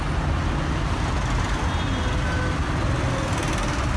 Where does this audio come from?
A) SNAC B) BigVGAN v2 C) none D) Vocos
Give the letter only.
C